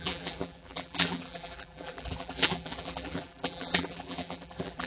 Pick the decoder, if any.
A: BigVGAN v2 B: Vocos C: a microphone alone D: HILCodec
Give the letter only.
A